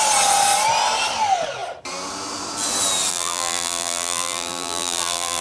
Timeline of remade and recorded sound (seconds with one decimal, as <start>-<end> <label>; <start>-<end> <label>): 0.0-3.1 recorded; 3.1-5.4 remade